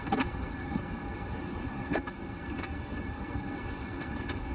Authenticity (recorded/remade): remade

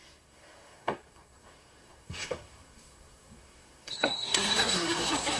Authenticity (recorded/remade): remade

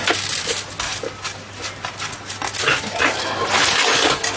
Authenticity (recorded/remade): recorded